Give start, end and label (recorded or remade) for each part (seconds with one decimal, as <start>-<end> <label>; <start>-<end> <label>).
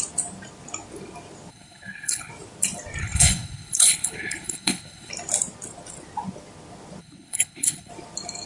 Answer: 0.0-1.5 recorded; 1.5-2.3 remade; 2.3-3.0 recorded; 3.0-5.1 remade; 5.1-7.0 recorded; 7.0-7.9 remade; 7.9-8.5 recorded